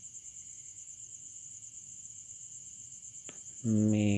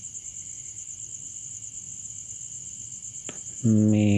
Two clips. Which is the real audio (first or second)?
second